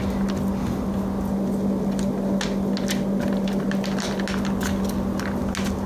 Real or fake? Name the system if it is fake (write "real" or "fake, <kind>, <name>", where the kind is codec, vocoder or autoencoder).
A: real